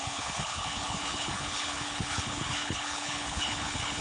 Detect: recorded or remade remade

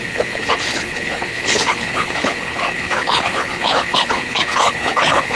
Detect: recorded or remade remade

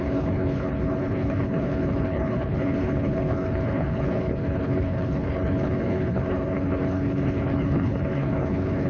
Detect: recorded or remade remade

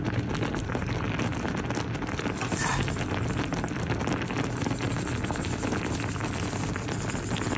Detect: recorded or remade recorded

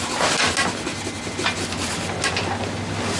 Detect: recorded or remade recorded